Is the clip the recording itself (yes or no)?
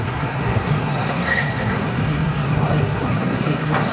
no